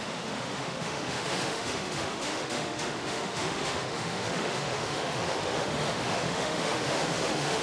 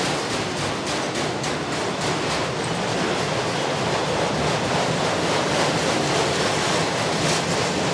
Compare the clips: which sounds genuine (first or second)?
second